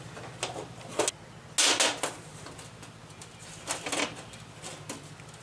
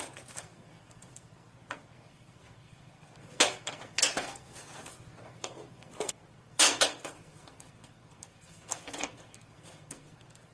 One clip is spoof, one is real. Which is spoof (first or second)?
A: second